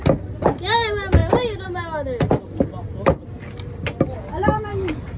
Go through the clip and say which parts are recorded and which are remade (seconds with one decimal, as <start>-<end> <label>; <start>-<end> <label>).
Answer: 0.0-4.7 recorded; 4.7-5.2 remade